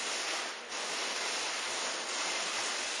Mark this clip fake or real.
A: real